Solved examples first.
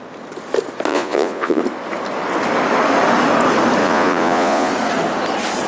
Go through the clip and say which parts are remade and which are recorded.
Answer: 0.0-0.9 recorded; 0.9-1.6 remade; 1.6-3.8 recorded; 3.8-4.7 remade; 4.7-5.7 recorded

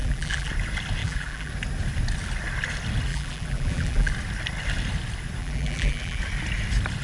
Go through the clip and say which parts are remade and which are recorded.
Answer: 0.0-0.5 remade; 0.5-1.0 recorded; 1.0-1.5 remade; 1.5-3.1 recorded; 3.1-4.1 remade; 4.1-5.4 recorded; 5.4-6.2 remade; 6.2-7.0 recorded

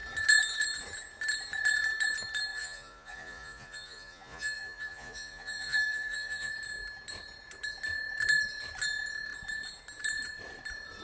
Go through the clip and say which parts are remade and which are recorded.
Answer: 0.0-2.5 recorded; 2.5-6.5 remade; 6.5-11.0 recorded

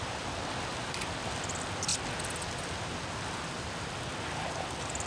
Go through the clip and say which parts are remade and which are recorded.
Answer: 0.0-5.1 recorded

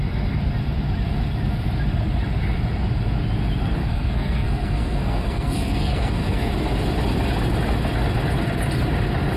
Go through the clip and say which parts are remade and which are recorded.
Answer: 0.0-3.8 recorded; 3.8-6.5 remade; 6.5-9.4 recorded

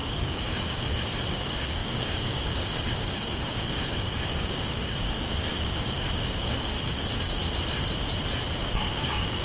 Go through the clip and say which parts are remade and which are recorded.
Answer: 0.0-7.4 remade; 7.4-8.6 recorded; 8.6-9.4 remade